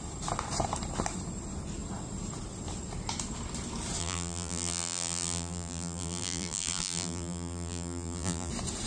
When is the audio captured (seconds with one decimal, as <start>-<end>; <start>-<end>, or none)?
0.0-4.0; 8.5-8.9